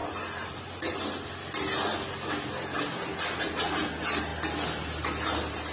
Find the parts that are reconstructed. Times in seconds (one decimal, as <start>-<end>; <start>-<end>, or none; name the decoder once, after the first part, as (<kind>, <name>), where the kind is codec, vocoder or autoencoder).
none